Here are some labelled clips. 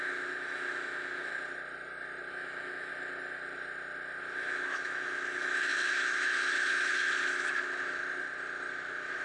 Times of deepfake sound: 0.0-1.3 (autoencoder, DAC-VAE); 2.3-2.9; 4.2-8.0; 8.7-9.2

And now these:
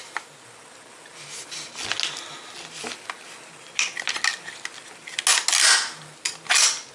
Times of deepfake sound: none

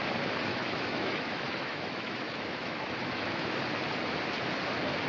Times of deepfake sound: 0.5-3.6 (autoencoder, DAC-VAE)

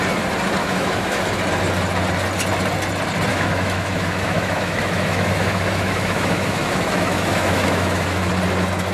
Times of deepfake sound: 0.6-1.4 (autoencoder, DAC-VAE); 3.3-8.3

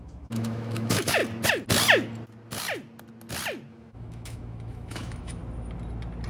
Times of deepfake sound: 0.0-1.2 (autoencoder, DAC-VAE); 3.7-5.4